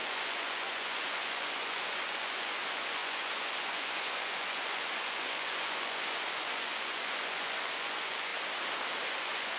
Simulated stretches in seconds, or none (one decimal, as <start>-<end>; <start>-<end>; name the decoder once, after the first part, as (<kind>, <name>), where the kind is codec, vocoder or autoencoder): 0.0-8.3 (vocoder, Vocos); 9.1-9.6